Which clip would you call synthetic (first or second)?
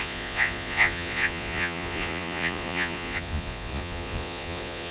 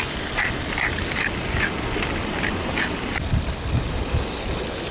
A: first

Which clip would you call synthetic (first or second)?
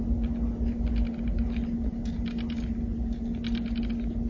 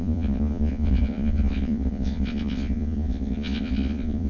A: second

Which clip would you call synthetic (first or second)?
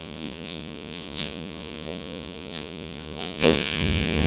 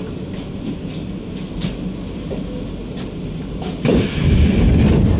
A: first